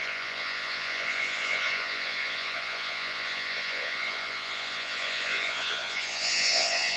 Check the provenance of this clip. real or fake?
fake